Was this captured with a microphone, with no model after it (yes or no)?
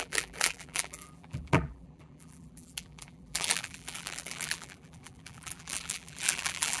no